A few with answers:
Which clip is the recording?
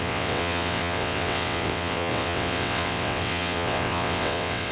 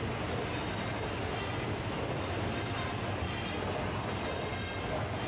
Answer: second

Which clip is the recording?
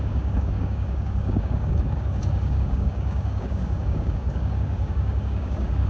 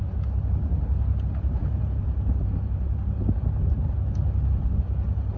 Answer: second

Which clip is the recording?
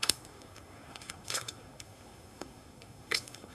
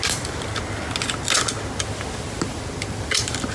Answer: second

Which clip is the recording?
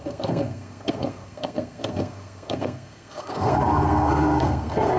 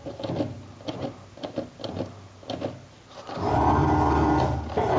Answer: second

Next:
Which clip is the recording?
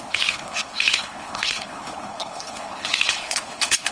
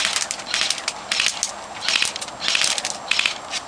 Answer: second